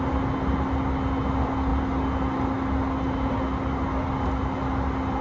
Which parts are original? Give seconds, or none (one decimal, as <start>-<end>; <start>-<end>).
0.0-5.2